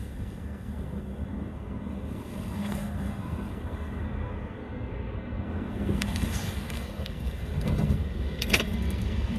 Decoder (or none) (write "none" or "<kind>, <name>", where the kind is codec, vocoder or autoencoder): codec, SNAC